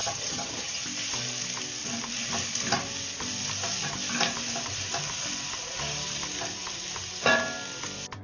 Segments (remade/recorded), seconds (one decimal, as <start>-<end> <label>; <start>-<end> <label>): 0.0-0.8 remade; 0.8-8.2 recorded